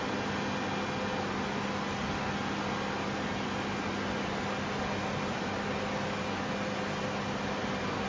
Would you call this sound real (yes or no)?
yes